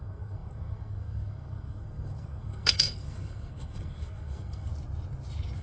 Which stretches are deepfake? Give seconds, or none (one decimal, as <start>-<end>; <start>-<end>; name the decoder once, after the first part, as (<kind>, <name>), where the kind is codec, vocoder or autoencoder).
0.0-4.7 (codec, SNAC)